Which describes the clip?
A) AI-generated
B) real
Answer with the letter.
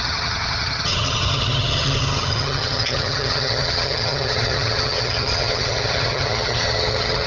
A